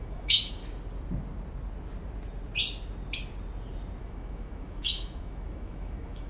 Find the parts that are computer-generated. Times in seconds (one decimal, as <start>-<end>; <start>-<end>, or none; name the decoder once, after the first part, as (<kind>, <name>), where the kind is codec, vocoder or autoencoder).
0.0-0.6 (autoencoder, DAC-VAE); 4.0-6.3